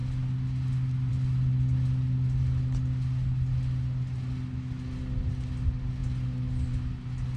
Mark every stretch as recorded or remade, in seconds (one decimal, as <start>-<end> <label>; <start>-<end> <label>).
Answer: 0.0-7.4 recorded